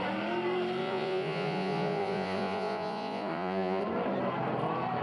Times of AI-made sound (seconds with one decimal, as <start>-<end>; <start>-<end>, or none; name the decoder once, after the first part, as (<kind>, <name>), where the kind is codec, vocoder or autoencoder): 0.8-3.8 (vocoder, Vocos)

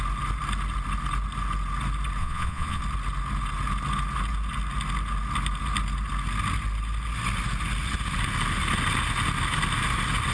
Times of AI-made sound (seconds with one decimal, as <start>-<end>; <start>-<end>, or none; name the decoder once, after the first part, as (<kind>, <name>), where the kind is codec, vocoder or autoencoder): 2.2-2.8 (vocoder, Vocos)

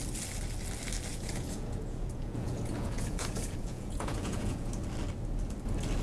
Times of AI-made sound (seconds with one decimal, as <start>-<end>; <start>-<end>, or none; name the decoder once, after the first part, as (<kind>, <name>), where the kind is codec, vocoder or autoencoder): 1.1-4.7 (vocoder, Vocos)

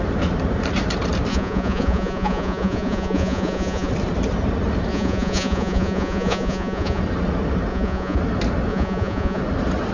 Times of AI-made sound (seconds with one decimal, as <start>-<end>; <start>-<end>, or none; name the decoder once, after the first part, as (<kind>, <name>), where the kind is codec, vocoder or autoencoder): 1.3-3.9 (vocoder, Vocos); 4.9-7.0; 7.7-8.2; 8.7-9.4

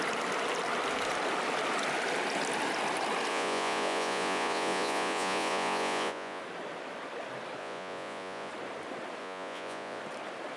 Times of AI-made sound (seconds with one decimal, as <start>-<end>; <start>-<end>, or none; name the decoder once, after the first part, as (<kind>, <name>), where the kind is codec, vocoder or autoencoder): 3.3-6.4 (vocoder, Vocos); 7.6-8.5; 9.2-10.0